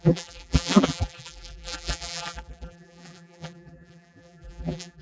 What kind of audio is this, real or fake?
fake